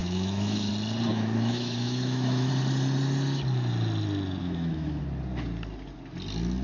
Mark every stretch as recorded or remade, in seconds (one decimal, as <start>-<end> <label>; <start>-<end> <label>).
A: 0.0-0.7 remade; 0.7-1.1 recorded; 1.1-2.5 remade; 2.5-4.4 recorded; 4.4-5.0 remade; 5.0-6.6 recorded